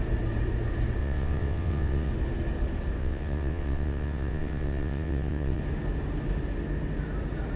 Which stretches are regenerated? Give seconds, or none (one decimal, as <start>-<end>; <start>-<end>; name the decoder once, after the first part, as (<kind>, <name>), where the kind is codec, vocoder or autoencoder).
1.0-2.1 (vocoder, WaveNeXt); 3.0-5.6